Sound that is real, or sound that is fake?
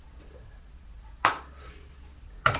fake